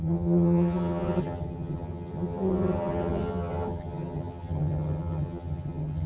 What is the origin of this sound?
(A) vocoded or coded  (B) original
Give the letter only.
A